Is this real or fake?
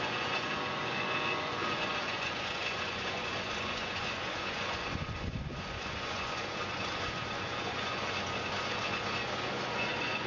fake